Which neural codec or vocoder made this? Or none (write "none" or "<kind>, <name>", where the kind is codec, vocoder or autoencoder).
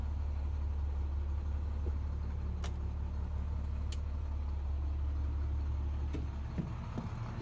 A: none